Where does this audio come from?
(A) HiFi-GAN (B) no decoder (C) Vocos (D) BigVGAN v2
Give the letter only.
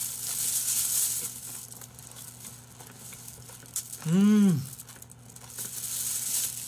B